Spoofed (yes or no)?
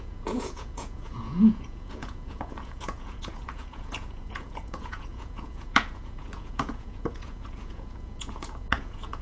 yes